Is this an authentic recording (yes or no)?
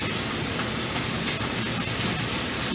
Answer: yes